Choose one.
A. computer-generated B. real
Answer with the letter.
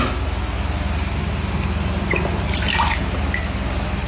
B